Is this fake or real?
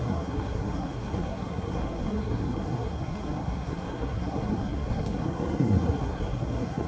fake